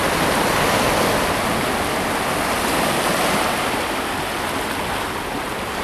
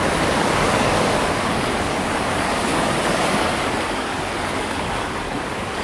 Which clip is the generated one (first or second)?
second